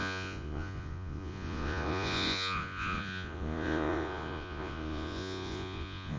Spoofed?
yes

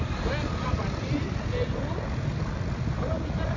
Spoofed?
no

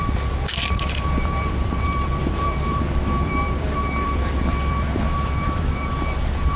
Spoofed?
yes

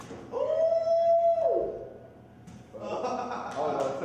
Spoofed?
no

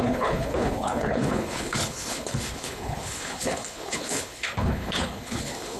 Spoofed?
yes